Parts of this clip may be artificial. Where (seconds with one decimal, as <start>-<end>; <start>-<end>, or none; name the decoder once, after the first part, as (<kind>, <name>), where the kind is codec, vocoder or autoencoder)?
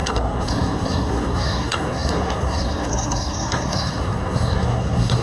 0.0-5.2 (codec, SNAC)